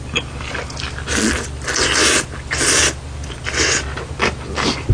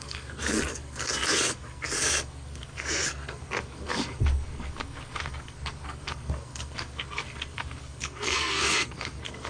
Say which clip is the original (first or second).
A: first